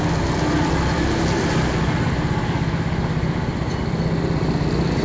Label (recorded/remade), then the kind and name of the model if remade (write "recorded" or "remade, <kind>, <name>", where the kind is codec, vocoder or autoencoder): recorded